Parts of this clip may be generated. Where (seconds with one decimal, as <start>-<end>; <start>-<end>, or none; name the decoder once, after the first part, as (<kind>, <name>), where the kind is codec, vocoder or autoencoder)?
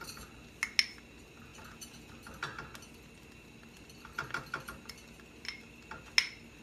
1.5-2.1 (vocoder, Vocos)